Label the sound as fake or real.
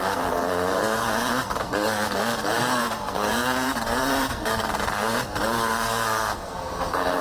fake